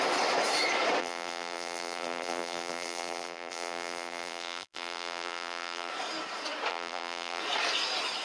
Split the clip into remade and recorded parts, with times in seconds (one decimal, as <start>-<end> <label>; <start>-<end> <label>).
0.0-1.0 recorded; 1.0-5.9 remade; 5.9-6.7 recorded; 6.7-7.4 remade; 7.4-8.2 recorded

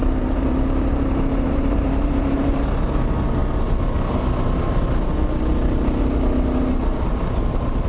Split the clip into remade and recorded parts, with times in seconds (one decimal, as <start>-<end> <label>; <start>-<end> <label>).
0.0-2.6 remade; 2.6-7.9 recorded